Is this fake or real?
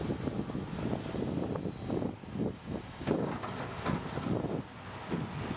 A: real